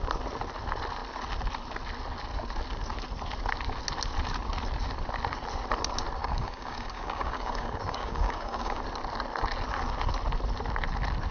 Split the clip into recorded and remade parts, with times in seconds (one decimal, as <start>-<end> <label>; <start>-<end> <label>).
0.0-6.2 recorded; 6.2-8.8 remade; 8.8-11.3 recorded